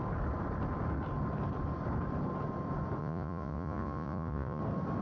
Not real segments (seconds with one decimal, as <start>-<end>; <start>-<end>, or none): 3.0-4.6